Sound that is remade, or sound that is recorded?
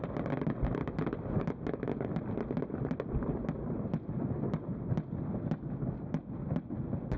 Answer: recorded